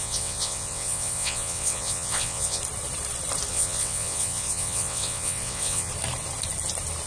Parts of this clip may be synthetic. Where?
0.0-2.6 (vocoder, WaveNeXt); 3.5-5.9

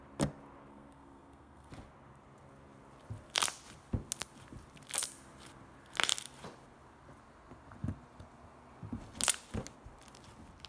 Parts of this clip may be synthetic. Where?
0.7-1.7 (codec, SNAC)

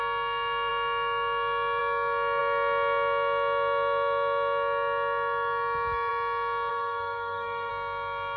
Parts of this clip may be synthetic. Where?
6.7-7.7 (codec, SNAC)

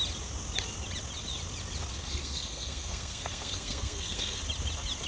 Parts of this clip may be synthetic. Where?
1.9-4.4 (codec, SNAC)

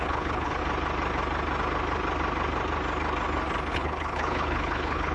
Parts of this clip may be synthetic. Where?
0.0-0.6 (codec, HILCodec); 3.7-5.1

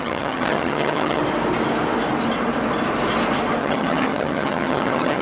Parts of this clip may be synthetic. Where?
0.0-1.2 (vocoder, HiFi-GAN); 3.6-5.2